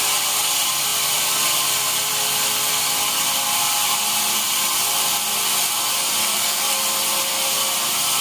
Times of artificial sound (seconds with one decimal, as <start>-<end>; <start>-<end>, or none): 6.2-6.7